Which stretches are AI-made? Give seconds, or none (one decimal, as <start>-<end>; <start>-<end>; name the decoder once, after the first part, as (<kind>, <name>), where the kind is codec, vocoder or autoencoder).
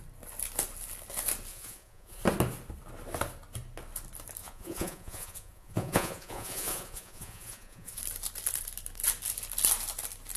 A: 1.5-2.2 (vocoder, Vocos); 4.4-8.0